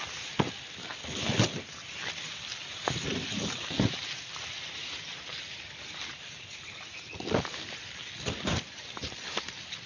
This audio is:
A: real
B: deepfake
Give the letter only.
A